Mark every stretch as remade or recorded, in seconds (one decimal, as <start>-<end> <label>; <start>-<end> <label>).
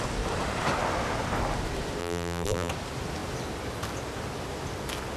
0.0-2.0 recorded; 2.0-2.7 remade; 2.7-5.2 recorded